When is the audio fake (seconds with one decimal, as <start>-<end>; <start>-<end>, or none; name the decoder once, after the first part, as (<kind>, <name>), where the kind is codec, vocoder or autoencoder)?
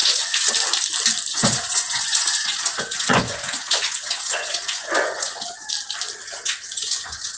0.0-0.5 (vocoder, Vocos); 1.3-5.7; 6.2-7.4